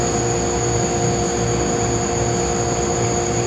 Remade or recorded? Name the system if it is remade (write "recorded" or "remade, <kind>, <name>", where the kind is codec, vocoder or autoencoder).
recorded